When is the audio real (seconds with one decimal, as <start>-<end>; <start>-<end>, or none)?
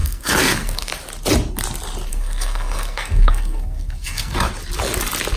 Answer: 0.9-2.1; 4.5-5.4